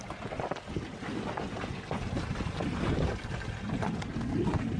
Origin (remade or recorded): recorded